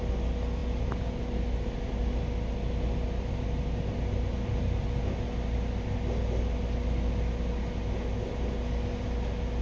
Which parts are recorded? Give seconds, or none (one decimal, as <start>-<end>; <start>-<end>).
0.0-9.6